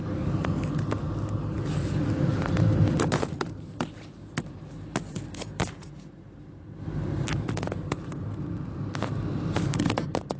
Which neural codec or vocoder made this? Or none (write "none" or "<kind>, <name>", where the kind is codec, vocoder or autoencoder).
none